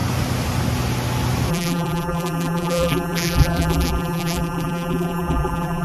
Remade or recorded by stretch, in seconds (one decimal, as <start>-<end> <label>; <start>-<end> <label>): 0.0-1.5 recorded; 1.5-5.8 remade